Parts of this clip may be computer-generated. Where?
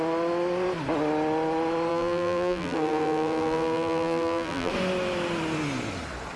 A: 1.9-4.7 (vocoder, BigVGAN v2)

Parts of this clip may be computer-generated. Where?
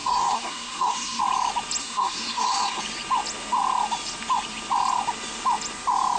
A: 0.0-1.2 (codec, SNAC); 1.8-2.8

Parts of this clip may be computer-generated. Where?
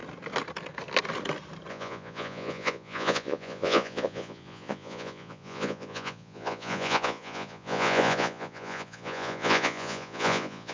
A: 1.7-10.7 (vocoder, Vocos)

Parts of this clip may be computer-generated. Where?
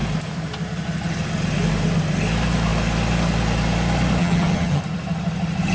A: 4.2-4.8 (vocoder, HiFi-GAN)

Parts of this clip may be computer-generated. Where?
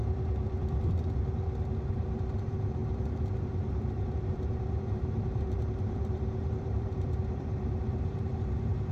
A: 1.9-8.9 (vocoder, BigVGAN v2)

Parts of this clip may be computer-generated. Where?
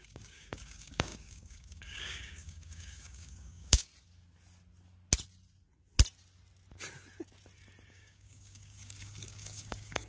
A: 0.0-3.9 (codec, DAC); 7.9-10.1